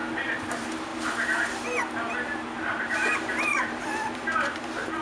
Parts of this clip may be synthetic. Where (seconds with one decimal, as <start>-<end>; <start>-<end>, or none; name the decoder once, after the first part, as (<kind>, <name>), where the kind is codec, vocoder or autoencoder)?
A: 0.5-0.9 (vocoder, BigVGAN v2); 2.8-5.0